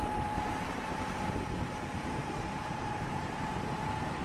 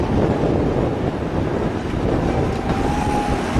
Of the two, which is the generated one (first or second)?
first